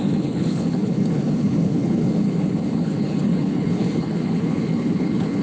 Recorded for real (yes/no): no